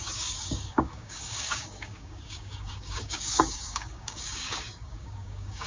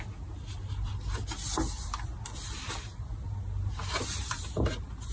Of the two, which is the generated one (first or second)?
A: first